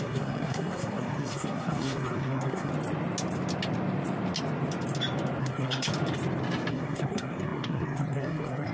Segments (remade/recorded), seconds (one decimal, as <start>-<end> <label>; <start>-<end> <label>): 0.0-2.7 remade; 2.7-5.4 recorded; 5.4-5.9 remade; 5.9-6.7 recorded; 6.7-8.7 remade